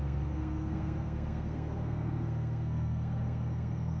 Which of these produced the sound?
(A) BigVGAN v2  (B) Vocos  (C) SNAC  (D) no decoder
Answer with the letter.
C